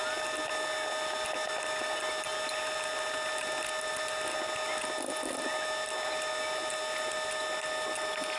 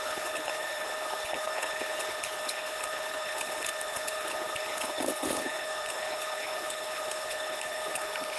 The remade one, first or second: second